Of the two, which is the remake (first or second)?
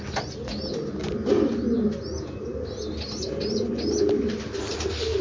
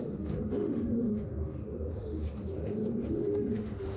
second